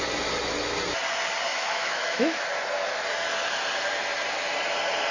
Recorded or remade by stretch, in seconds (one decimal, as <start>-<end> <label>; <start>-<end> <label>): 0.0-1.5 recorded; 1.5-2.5 remade; 2.5-5.1 recorded